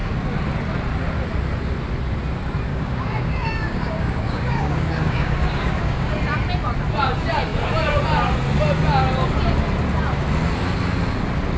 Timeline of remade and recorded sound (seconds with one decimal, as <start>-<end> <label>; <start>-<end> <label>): 0.0-2.7 recorded; 2.7-6.1 remade; 6.1-11.6 recorded